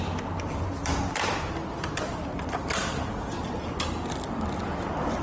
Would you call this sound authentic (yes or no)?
yes